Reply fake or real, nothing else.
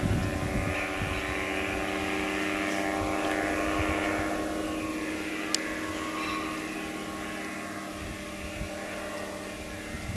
real